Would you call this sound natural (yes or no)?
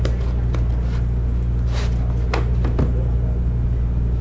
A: yes